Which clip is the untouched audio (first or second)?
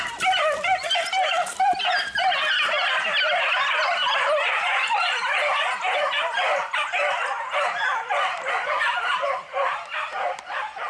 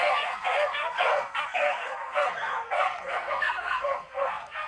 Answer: first